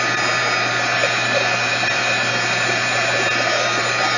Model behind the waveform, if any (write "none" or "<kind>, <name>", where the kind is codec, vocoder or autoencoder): none